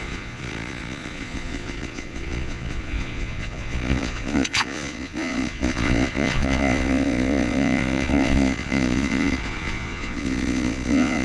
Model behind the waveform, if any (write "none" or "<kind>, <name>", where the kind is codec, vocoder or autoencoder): vocoder, Vocos